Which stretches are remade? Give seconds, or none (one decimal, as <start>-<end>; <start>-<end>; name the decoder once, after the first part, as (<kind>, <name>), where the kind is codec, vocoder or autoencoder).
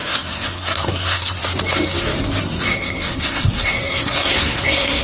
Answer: 0.0-1.4 (codec, SNAC); 2.4-5.0